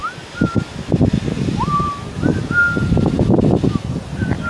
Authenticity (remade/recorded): recorded